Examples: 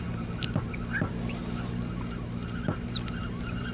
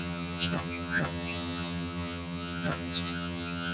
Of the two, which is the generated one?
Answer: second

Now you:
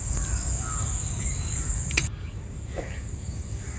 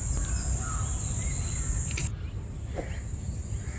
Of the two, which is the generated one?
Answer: first